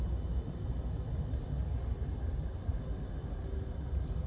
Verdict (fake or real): real